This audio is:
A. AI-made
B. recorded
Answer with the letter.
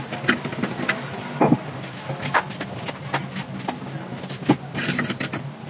B